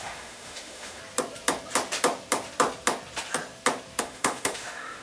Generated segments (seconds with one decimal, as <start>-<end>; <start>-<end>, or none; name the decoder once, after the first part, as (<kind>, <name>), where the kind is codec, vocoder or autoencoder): 0.0-1.0 (autoencoder, DAC-VAE); 4.0-5.0